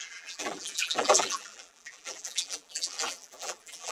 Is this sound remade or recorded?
remade